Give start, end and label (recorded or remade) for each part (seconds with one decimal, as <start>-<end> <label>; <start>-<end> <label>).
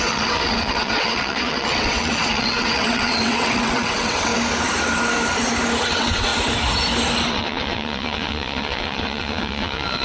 0.0-4.3 remade; 4.3-5.8 recorded; 5.8-6.3 remade; 6.3-7.3 recorded; 7.3-10.0 remade